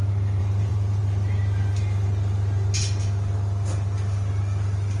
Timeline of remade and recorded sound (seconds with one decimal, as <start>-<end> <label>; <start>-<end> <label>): 0.0-0.4 recorded; 0.4-1.0 remade; 1.0-5.0 recorded